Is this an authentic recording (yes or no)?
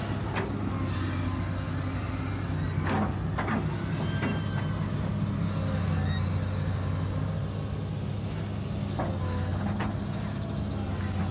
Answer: yes